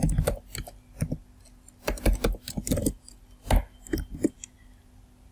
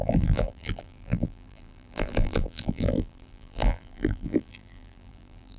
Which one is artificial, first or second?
second